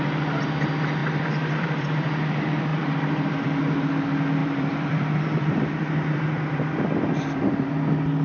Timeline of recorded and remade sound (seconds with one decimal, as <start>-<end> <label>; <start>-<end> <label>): 0.0-1.0 recorded; 1.0-2.3 remade; 2.3-2.7 recorded; 2.7-3.6 remade; 3.6-4.4 recorded; 4.4-7.7 remade; 7.7-8.2 recorded